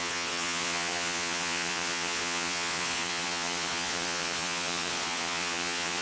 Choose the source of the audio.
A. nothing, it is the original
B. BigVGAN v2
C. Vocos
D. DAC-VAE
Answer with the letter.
C